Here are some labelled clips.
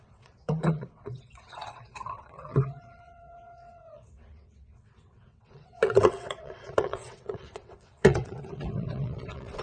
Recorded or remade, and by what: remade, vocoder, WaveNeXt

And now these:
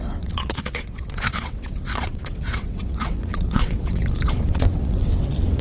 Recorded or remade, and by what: remade, vocoder, WaveNeXt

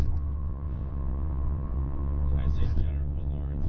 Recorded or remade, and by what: remade, vocoder, WaveNeXt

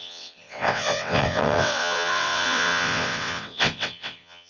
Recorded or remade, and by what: remade, vocoder, WaveNeXt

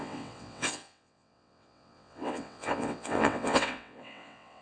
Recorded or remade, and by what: remade, vocoder, WaveNeXt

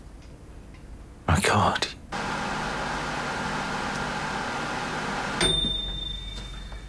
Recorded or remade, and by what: recorded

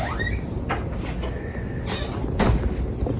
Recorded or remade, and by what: recorded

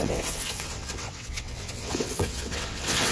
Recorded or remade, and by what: remade, vocoder, WaveNeXt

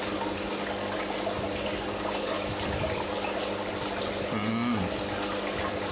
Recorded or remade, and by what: recorded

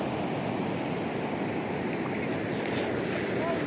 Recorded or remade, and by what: recorded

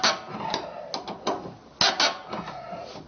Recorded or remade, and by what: recorded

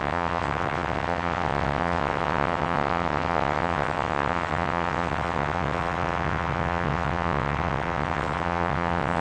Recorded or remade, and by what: remade, vocoder, WaveNeXt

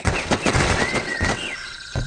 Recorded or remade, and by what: remade, vocoder, WaveNeXt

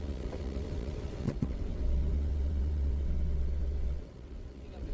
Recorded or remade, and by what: remade, vocoder, WaveNeXt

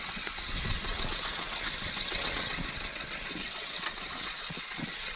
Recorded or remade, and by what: remade, vocoder, WaveNeXt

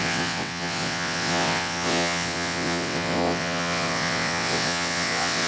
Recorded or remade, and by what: remade, vocoder, WaveNeXt